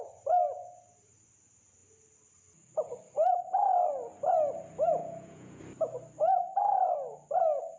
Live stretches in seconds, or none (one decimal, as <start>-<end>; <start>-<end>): 0.0-5.0; 5.6-7.8